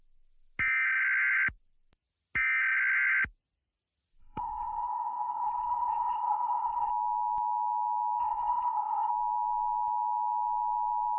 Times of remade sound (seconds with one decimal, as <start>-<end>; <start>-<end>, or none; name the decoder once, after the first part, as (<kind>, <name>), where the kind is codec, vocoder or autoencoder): 4.2-6.9 (codec, HILCodec); 8.2-9.1

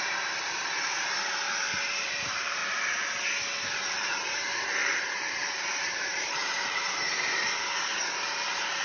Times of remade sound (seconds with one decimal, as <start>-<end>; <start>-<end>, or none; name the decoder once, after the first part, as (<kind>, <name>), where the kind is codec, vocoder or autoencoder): 0.0-2.6 (vocoder, BigVGAN v2); 3.7-8.8

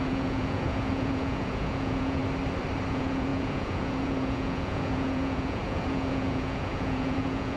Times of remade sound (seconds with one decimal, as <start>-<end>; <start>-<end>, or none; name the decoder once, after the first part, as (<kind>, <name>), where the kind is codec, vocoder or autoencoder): 0.0-2.2 (vocoder, Vocos); 2.9-7.6

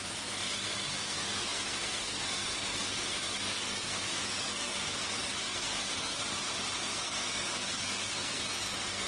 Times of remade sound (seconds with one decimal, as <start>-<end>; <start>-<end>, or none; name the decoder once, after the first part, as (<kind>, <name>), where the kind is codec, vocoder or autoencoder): 0.0-6.2 (codec, SNAC); 6.9-9.1

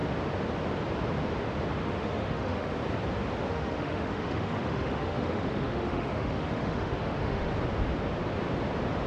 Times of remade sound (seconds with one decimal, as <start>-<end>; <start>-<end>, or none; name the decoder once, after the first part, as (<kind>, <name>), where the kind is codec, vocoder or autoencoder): 1.8-2.7 (autoencoder, DAC-VAE); 3.5-7.5

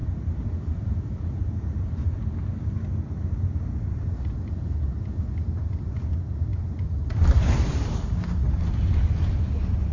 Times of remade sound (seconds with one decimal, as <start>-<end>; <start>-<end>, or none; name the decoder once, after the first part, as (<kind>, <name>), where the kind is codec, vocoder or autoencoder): 0.0-1.4 (vocoder, BigVGAN v2)

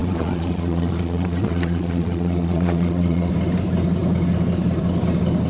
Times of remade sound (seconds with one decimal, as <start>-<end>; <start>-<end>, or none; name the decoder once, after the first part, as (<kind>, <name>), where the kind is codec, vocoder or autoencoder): 0.0-3.3 (vocoder, Vocos)